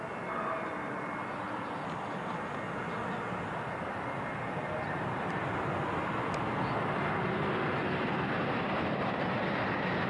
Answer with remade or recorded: recorded